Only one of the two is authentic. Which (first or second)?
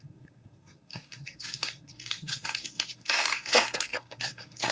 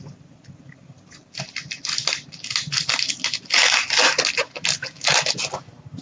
second